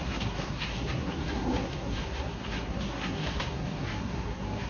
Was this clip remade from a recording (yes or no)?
yes